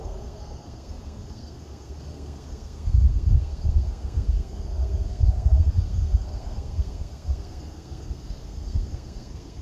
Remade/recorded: remade